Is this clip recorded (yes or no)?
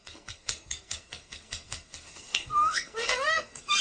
no